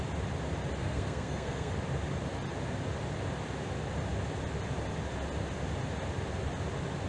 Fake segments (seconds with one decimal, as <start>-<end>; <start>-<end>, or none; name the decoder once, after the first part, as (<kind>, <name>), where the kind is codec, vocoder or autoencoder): 0.8-1.7 (codec, SNAC)